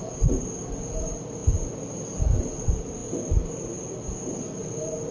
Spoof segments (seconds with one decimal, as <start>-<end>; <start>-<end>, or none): none